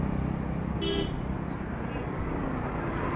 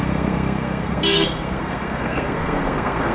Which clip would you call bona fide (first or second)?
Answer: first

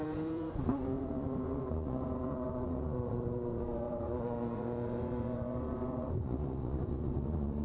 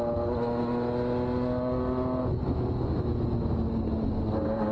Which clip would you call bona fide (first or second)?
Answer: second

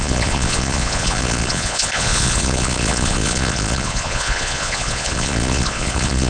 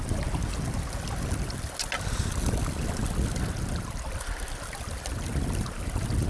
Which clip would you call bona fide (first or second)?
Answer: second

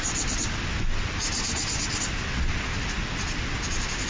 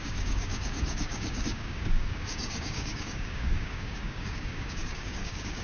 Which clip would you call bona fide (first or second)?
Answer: first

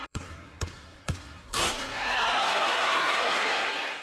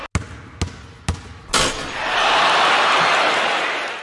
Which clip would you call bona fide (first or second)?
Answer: second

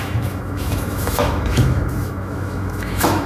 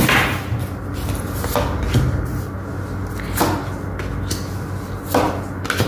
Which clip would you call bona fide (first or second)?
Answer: second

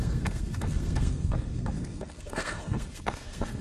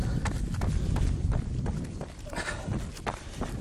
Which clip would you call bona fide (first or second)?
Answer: second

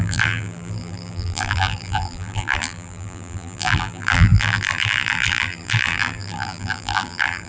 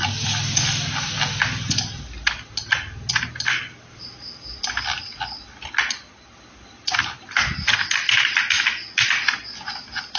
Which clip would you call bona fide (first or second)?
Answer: second